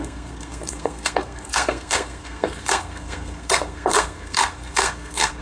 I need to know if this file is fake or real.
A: fake